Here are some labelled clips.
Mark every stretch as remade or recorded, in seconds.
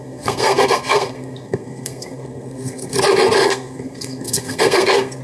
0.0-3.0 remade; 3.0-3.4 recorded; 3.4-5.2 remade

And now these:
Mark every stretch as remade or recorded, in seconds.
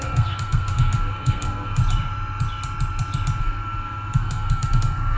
0.0-1.8 remade; 1.8-3.4 recorded; 3.4-5.2 remade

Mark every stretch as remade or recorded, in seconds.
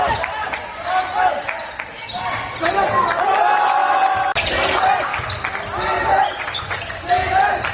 0.0-6.1 recorded; 6.1-7.1 remade; 7.1-7.7 recorded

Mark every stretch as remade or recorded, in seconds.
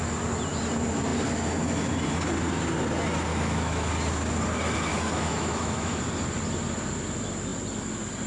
0.0-3.3 recorded; 3.3-3.9 remade; 3.9-4.9 recorded; 4.9-6.0 remade; 6.0-8.3 recorded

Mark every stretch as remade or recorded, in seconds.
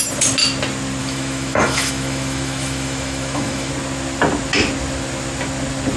0.0-1.0 recorded; 1.0-3.7 remade; 3.7-6.0 recorded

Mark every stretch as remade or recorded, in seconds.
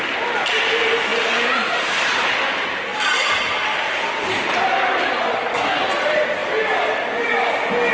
0.0-5.3 recorded; 5.3-5.8 remade; 5.8-7.9 recorded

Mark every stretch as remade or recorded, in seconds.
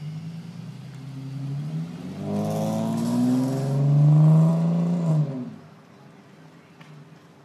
0.0-7.4 recorded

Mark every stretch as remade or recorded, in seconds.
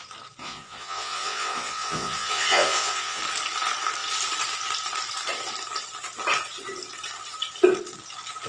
0.0-0.4 recorded; 0.4-3.2 remade; 3.2-8.5 recorded